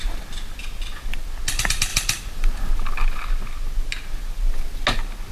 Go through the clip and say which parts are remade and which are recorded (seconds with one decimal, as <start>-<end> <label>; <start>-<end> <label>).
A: 0.0-1.9 recorded; 1.9-2.7 remade; 2.7-5.3 recorded